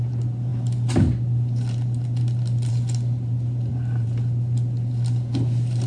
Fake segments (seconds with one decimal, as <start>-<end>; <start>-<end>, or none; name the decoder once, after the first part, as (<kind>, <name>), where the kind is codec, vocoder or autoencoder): 3.7-4.2 (vocoder, BigVGAN v2)